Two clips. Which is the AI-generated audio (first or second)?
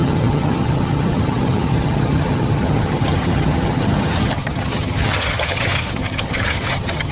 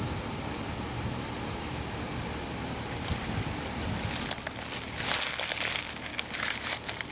first